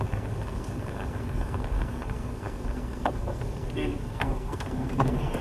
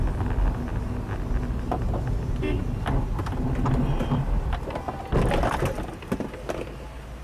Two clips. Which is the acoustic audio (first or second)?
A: second